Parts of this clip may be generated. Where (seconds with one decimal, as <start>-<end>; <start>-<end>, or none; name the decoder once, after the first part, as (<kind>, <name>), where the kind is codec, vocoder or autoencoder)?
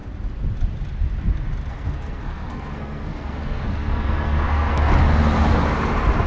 1.7-4.9 (codec, SNAC)